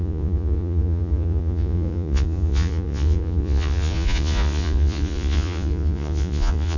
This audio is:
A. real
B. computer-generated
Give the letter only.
B